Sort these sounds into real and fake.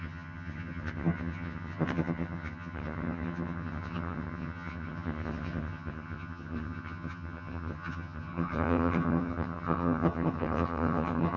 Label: fake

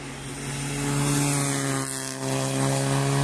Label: real